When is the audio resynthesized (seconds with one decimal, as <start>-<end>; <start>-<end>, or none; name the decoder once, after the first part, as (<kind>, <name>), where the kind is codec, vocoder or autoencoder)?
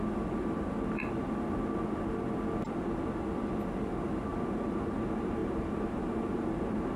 4.3-4.8 (vocoder, BigVGAN v2); 5.4-6.6